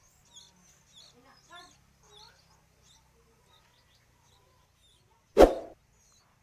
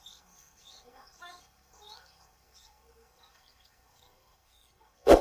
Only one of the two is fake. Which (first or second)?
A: second